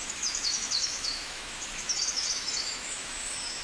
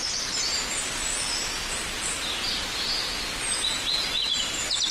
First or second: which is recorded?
second